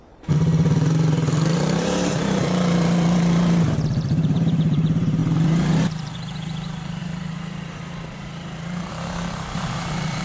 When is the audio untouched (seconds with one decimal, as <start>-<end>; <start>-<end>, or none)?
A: 5.2-5.7